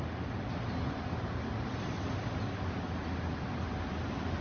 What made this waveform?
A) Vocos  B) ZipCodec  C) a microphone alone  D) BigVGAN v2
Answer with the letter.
C